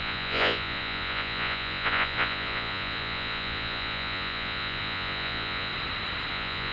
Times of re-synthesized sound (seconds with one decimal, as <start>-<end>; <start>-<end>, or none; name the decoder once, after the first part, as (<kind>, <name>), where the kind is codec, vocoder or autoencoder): 0.0-5.7 (vocoder, Vocos); 6.3-6.7